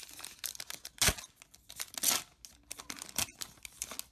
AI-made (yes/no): no